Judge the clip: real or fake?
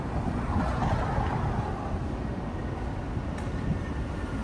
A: real